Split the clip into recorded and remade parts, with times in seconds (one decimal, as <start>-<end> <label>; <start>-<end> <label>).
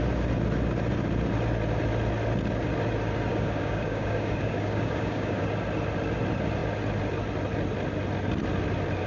0.0-3.3 recorded; 3.3-5.4 remade; 5.4-9.1 recorded